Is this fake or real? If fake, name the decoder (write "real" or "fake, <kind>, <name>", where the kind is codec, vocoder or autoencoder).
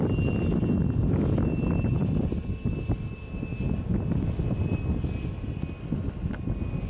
real